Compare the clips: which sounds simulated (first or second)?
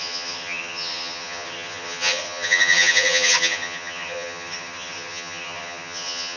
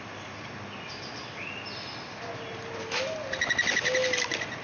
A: first